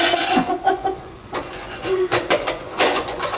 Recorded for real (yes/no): no